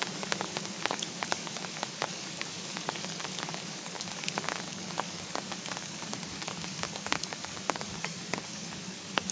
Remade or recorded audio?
remade